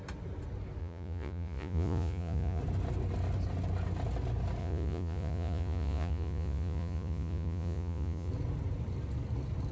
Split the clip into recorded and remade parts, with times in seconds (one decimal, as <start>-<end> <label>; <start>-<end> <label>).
0.0-0.8 recorded; 0.8-2.6 remade; 2.6-4.6 recorded; 4.6-8.3 remade; 8.3-9.7 recorded